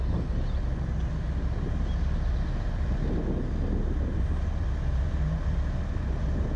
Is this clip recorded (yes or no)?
yes